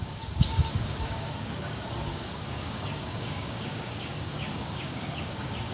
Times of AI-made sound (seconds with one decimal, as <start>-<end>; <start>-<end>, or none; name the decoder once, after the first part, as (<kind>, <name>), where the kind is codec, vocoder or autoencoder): 0.0-5.7 (codec, DAC)